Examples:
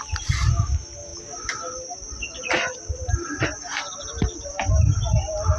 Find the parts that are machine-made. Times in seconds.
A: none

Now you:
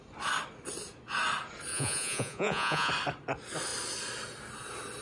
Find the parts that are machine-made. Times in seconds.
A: 1.7-2.9